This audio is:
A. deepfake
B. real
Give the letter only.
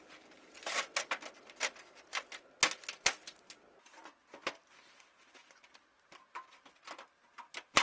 B